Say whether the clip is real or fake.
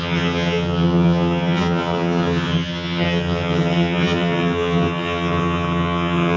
fake